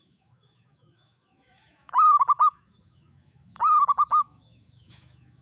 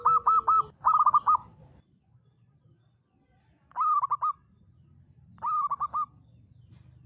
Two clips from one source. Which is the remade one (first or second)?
first